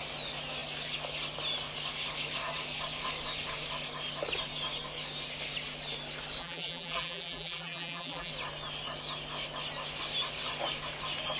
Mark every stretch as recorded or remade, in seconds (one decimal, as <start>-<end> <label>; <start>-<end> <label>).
0.0-6.4 recorded; 6.4-8.3 remade; 8.3-11.4 recorded